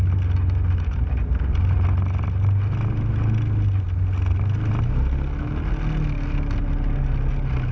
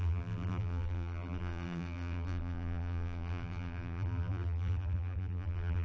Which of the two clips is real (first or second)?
first